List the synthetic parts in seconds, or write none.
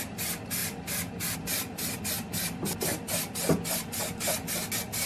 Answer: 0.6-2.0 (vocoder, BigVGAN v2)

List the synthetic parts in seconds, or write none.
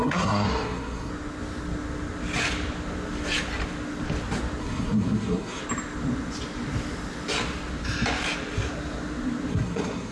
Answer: 0.0-1.1 (codec, SNAC); 4.6-5.6; 9.5-10.1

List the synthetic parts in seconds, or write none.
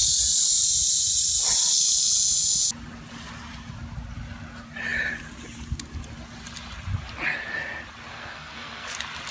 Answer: 8.1-8.9 (codec, SNAC)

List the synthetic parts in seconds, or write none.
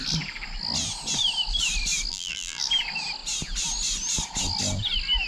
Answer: 2.1-2.6 (vocoder, BigVGAN v2)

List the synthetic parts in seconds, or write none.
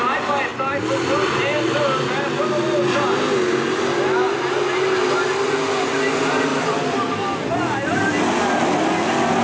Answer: 6.5-8.0 (vocoder, BigVGAN v2)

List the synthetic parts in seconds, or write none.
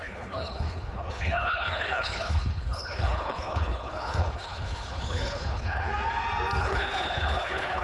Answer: 0.0-5.9 (codec, HILCodec); 6.6-7.8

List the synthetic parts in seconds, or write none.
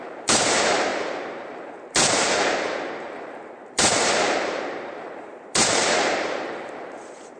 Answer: 0.0-7.4 (vocoder, BigVGAN v2)